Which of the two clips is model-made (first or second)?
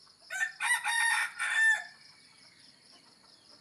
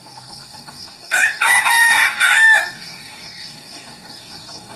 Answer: second